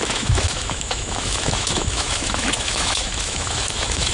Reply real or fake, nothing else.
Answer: fake